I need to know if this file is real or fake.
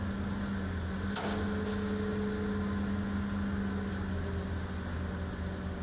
real